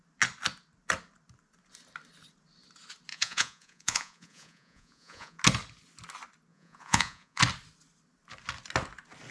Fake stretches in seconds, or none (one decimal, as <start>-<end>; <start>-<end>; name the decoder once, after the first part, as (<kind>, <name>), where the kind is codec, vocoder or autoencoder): 3.1-5.4 (vocoder, Vocos); 6.5-7.4